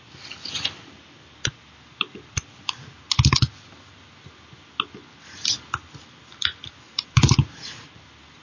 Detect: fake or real real